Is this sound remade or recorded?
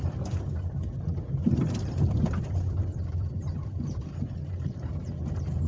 remade